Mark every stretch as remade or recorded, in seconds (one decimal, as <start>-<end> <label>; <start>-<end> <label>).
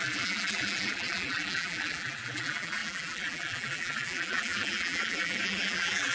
0.0-6.1 remade